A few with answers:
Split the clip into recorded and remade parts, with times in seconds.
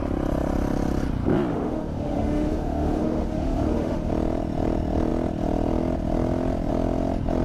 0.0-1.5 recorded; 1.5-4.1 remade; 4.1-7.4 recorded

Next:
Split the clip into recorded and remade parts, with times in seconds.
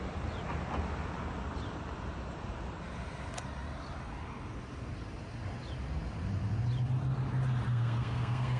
0.0-7.7 recorded; 7.7-8.6 remade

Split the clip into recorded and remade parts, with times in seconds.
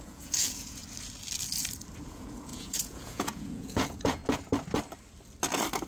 0.0-0.8 remade; 0.8-2.0 recorded; 2.0-4.2 remade; 4.2-5.9 recorded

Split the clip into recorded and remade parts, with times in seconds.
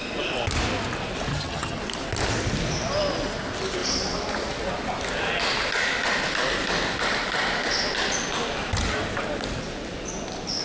0.0-1.3 recorded; 1.3-1.8 remade; 1.8-10.6 recorded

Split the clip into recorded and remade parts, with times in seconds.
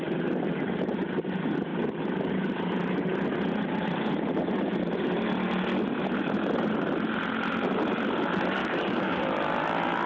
0.0-8.6 recorded; 8.6-9.2 remade; 9.2-10.1 recorded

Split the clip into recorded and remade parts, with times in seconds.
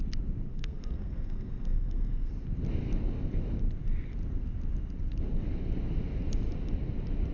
0.0-0.5 recorded; 0.5-2.3 remade; 2.3-7.3 recorded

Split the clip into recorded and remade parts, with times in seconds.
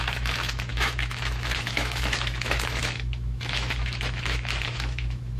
0.0-5.4 remade